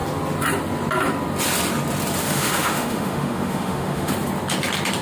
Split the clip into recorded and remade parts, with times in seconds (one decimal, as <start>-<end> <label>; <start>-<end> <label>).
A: 0.0-2.2 recorded; 2.2-4.1 remade; 4.1-5.0 recorded